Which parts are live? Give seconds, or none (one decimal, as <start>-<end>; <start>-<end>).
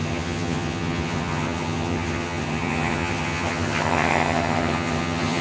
none